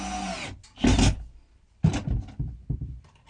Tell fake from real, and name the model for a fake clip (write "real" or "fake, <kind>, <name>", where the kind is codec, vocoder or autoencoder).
real